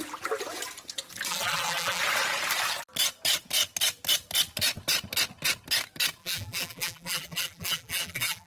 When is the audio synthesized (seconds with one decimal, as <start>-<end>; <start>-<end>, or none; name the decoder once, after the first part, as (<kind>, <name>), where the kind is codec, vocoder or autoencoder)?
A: 1.3-2.0 (vocoder, BigVGAN v2); 6.2-8.5